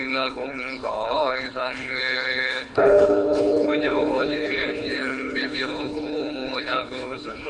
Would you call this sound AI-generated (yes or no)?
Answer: yes